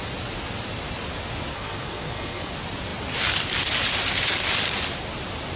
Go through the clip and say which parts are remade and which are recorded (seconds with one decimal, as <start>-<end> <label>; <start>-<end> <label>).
0.0-1.5 recorded; 1.5-2.5 remade; 2.5-5.6 recorded